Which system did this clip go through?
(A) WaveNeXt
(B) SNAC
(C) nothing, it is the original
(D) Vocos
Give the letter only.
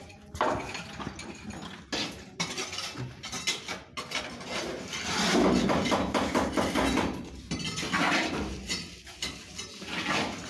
C